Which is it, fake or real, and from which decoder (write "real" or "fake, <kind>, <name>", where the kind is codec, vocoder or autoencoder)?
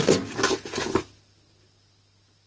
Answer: real